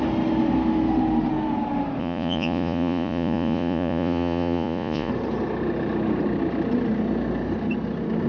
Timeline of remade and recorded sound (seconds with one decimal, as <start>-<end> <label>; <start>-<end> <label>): 0.0-2.0 recorded; 2.0-5.1 remade; 5.1-8.3 recorded